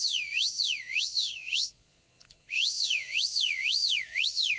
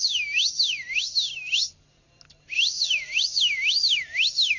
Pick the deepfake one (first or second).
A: first